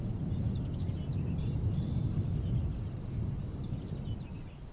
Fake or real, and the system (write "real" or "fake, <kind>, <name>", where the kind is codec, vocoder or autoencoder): real